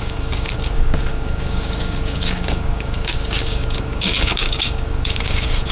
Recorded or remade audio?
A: remade